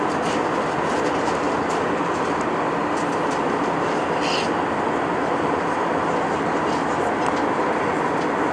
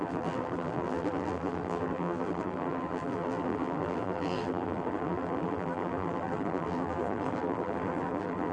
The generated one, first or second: second